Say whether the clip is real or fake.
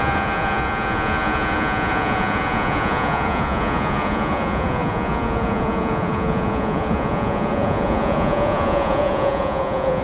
fake